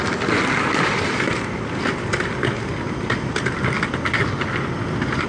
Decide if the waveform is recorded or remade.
remade